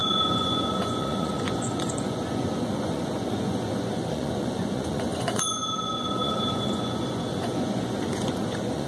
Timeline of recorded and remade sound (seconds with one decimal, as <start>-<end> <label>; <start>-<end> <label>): 0.0-8.9 remade